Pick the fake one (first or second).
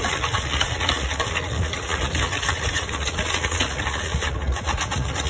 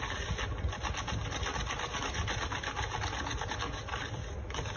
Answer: first